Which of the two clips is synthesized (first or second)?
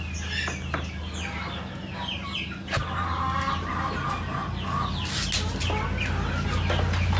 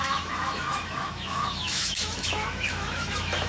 second